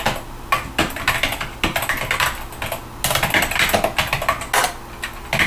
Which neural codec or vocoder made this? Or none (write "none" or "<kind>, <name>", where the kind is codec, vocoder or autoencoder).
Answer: none